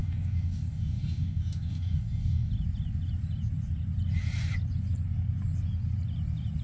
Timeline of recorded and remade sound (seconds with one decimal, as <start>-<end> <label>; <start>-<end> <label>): 0.0-2.5 remade; 2.5-6.6 recorded